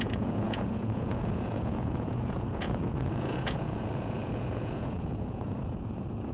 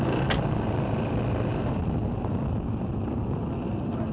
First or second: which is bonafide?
second